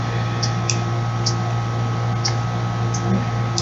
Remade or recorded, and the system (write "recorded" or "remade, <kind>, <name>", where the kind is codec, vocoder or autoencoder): recorded